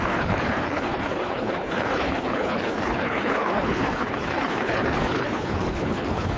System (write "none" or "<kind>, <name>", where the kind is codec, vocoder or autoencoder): codec, HILCodec